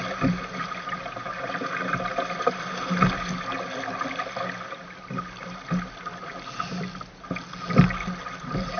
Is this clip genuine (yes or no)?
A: yes